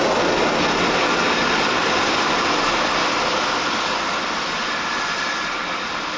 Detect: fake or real real